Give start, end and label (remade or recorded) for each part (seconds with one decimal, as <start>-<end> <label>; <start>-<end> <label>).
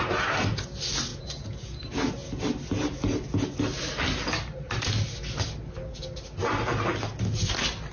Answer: 0.0-1.1 recorded; 1.1-1.8 remade; 1.8-7.9 recorded